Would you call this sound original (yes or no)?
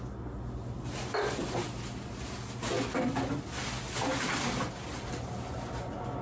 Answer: yes